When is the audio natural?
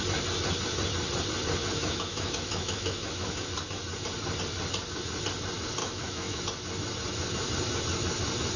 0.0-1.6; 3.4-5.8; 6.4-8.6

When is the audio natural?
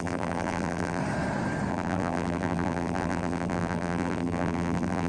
1.0-1.7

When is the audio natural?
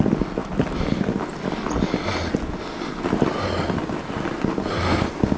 0.0-5.4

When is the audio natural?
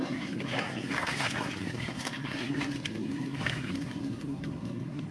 none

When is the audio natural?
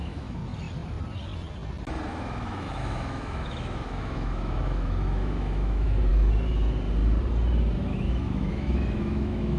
0.4-2.1; 6.1-7.8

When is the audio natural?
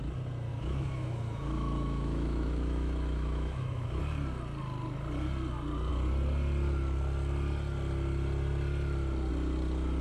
0.0-0.5; 4.0-10.0